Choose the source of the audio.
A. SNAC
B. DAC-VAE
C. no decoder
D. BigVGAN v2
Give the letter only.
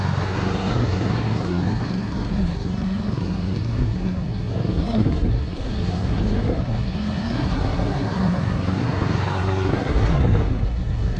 A